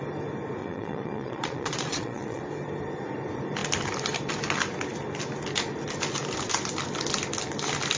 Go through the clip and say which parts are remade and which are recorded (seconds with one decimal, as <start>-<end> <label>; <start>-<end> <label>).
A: 0.0-0.6 recorded; 0.6-2.4 remade; 2.4-8.0 recorded

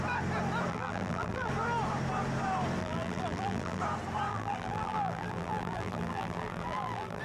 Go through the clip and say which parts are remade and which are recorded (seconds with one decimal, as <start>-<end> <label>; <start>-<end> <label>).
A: 0.0-0.7 recorded; 0.7-1.5 remade; 1.5-2.8 recorded; 2.8-3.8 remade; 3.8-4.3 recorded; 4.3-7.2 remade

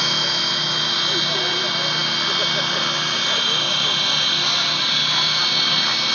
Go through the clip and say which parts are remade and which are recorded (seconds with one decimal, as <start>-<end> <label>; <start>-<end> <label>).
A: 0.0-6.1 recorded

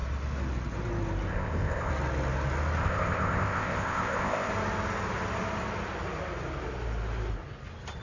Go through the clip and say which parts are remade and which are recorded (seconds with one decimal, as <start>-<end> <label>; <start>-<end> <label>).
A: 0.0-1.3 recorded; 1.3-1.9 remade; 1.9-2.8 recorded; 2.8-4.5 remade; 4.5-8.0 recorded

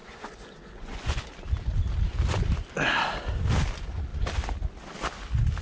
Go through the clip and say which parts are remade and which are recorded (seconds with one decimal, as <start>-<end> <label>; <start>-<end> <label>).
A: 0.0-1.2 remade; 1.2-5.6 recorded

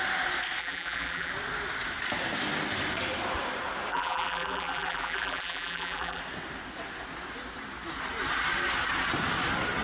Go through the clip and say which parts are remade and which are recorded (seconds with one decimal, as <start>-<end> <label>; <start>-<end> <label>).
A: 0.0-0.6 recorded; 0.6-1.3 remade; 1.3-3.9 recorded; 3.9-6.2 remade; 6.2-9.8 recorded

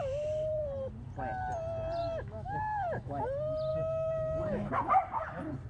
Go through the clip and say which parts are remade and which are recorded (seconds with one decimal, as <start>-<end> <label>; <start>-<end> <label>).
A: 0.0-2.0 recorded; 2.0-3.2 remade; 3.2-3.7 recorded; 3.7-4.7 remade; 4.7-5.7 recorded